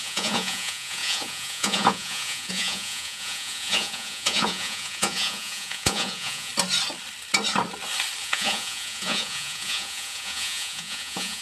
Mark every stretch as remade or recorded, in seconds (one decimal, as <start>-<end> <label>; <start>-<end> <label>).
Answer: 0.0-6.5 remade; 6.5-8.2 recorded; 8.2-11.4 remade